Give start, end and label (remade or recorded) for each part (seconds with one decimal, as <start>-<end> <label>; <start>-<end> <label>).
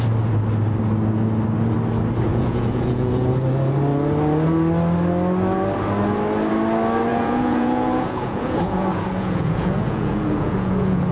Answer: 0.0-2.3 recorded; 2.3-3.3 remade; 3.3-7.1 recorded; 7.1-11.1 remade